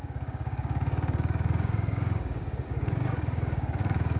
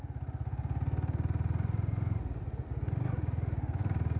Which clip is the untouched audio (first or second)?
second